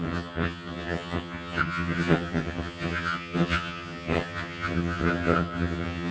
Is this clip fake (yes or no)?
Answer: yes